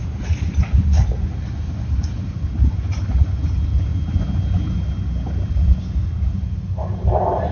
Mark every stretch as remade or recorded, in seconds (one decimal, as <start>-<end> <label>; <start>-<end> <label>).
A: 0.0-7.5 recorded